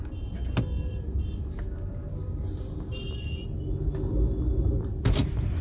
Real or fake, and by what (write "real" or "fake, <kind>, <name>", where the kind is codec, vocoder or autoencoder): real